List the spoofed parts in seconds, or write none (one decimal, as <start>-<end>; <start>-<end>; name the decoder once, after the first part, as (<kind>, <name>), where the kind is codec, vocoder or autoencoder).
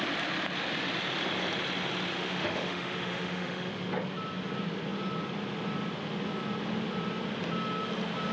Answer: 2.1-3.7 (autoencoder, DAC-VAE)